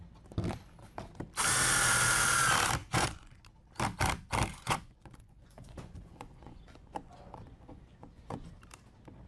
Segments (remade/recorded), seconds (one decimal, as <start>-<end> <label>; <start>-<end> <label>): 0.0-2.8 recorded; 2.8-3.4 remade; 3.4-4.5 recorded; 4.5-8.5 remade; 8.5-9.3 recorded